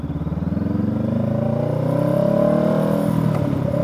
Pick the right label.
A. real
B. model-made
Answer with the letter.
A